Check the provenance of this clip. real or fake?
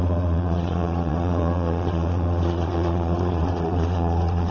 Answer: fake